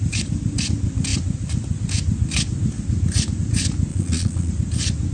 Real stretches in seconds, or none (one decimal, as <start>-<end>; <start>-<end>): 0.0-3.9; 4.5-5.1